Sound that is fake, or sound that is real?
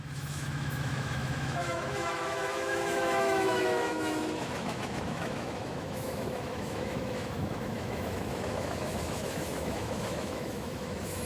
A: fake